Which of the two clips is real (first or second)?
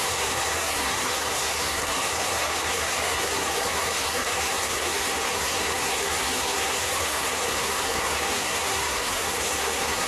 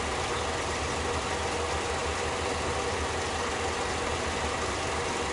second